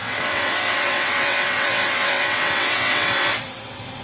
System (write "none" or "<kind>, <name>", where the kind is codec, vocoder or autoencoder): vocoder, WaveNeXt